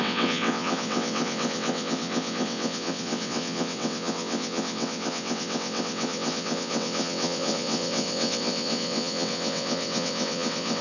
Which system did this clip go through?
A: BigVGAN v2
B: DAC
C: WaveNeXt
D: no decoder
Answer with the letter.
C